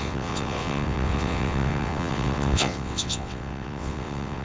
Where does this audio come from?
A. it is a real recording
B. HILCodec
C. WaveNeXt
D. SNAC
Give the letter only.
C